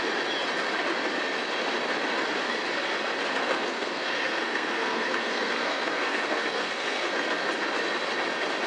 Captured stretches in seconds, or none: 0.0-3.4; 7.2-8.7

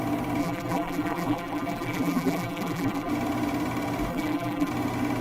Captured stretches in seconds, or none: 0.0-0.4; 3.1-4.1; 4.7-5.2

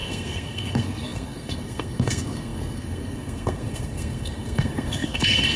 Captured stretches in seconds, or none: none

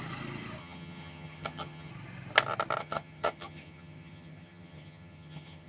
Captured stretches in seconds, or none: 0.0-0.6; 1.9-2.8

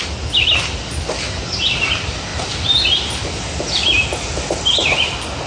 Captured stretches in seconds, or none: 0.0-5.5

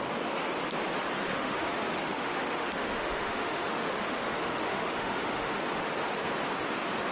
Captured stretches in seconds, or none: 0.0-1.3; 5.6-7.1